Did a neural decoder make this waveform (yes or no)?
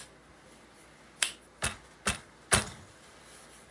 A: no